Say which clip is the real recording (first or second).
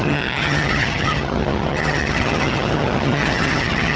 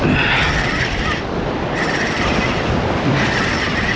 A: second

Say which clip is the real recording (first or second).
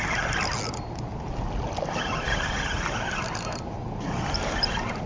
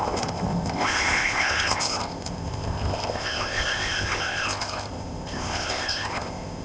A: first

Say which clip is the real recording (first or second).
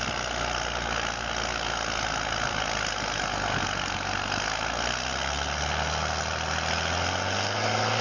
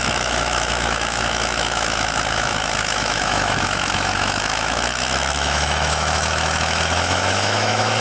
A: first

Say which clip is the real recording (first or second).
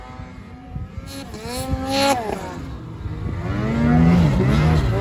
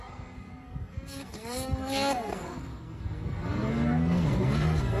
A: first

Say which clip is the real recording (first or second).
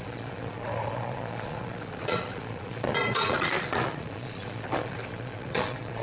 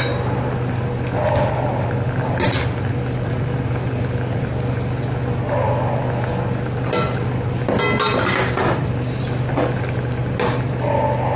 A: second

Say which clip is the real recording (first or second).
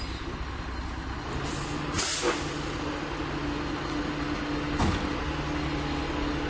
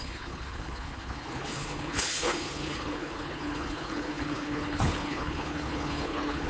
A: first